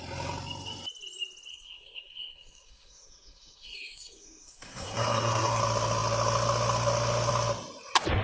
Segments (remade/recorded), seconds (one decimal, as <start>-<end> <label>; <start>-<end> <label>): 0.0-1.5 recorded; 1.5-5.6 remade; 5.6-8.2 recorded